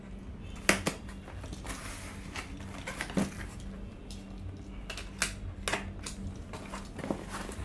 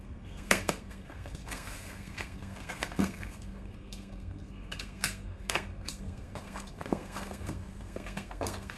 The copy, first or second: second